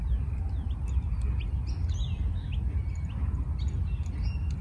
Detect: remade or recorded recorded